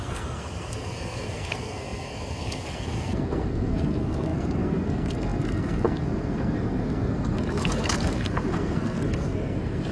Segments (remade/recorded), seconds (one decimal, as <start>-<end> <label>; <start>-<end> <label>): 0.0-9.9 remade